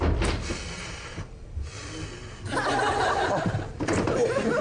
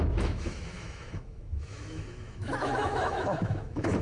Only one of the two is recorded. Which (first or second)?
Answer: first